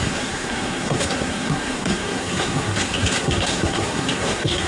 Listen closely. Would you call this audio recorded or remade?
remade